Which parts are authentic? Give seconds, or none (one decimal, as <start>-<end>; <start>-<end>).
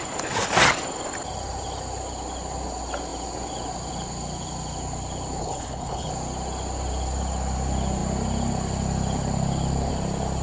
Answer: 0.0-5.4; 6.1-10.4